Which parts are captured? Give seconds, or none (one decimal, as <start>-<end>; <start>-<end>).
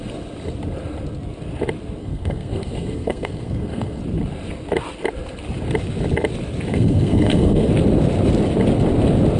0.0-2.0; 4.0-6.7; 7.7-9.4